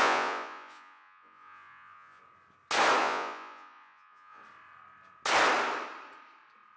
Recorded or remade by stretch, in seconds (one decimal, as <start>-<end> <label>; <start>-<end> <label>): 0.0-2.2 remade; 2.2-3.0 recorded; 3.0-4.4 remade; 4.4-6.8 recorded